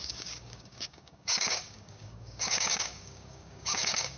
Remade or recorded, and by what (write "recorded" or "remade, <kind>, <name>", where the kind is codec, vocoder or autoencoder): remade, codec, DAC